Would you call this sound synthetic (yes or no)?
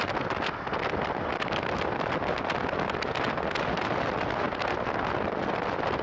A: no